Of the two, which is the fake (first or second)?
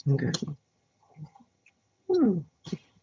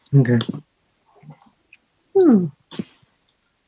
first